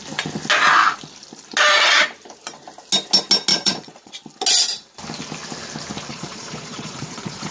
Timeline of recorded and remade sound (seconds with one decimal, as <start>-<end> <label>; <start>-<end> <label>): 0.0-3.5 recorded; 3.5-4.1 remade; 4.1-6.1 recorded; 6.1-7.5 remade